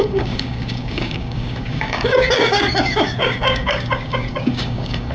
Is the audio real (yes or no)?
no